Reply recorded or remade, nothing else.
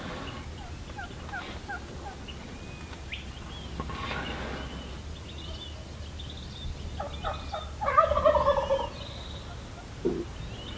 recorded